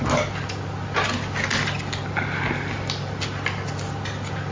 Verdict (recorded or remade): recorded